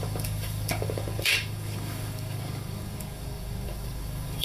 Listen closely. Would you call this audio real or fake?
fake